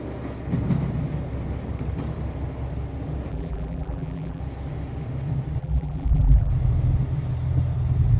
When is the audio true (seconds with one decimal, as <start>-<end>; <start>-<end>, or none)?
0.0-3.3; 4.4-5.6; 6.5-8.2